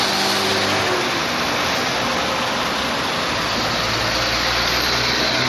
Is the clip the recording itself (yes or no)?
yes